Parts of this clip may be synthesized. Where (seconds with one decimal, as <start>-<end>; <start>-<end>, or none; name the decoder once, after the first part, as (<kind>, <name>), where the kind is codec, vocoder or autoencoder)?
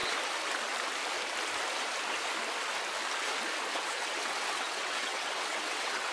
3.7-6.1 (vocoder, WaveNeXt)